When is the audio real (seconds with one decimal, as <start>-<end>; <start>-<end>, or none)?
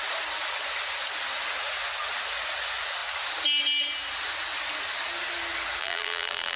0.0-5.8